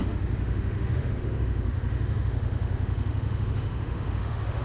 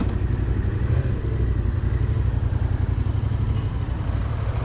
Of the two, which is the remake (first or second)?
first